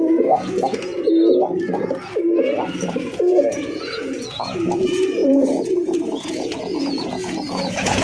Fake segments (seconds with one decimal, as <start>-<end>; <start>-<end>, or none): 0.0-0.9; 2.9-8.0